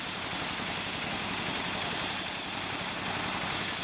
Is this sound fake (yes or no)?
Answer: no